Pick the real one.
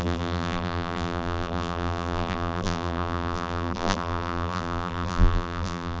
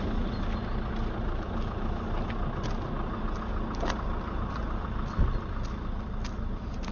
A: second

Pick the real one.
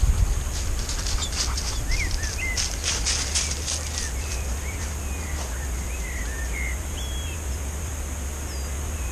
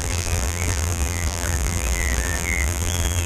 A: first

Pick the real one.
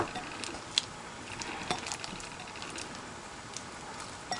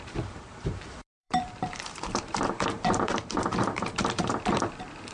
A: first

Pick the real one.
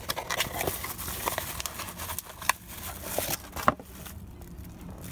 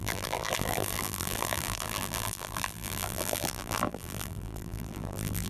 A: first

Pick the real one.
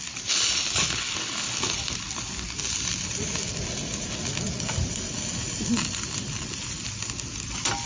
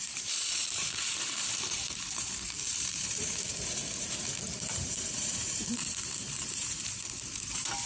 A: first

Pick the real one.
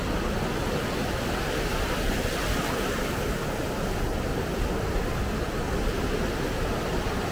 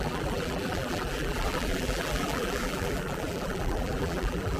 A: first